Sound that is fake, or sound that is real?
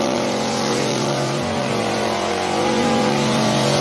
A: fake